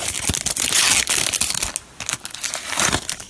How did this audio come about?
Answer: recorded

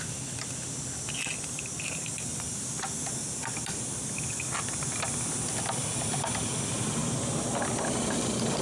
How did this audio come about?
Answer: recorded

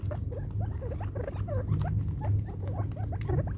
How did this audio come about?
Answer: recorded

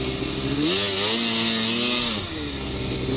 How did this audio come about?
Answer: recorded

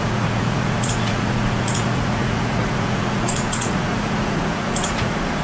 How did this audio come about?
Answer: remade